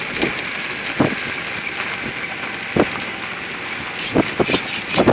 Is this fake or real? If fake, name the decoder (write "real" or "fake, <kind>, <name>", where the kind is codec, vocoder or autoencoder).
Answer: real